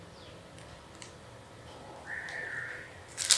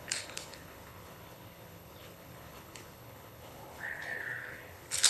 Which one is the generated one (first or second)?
second